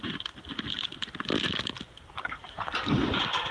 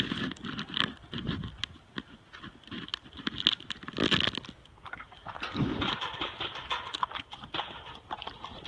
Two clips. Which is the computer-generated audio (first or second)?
first